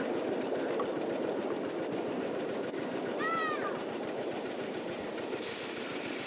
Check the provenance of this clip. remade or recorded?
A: recorded